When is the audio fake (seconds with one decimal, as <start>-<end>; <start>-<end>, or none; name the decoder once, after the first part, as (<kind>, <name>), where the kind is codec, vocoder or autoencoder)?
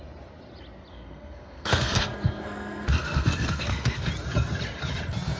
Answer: 0.9-4.1 (codec, SNAC)